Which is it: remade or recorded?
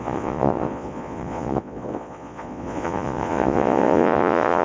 remade